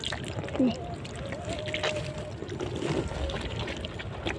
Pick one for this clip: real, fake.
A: real